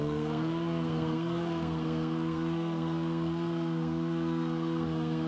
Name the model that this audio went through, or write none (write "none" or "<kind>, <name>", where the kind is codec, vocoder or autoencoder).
codec, SNAC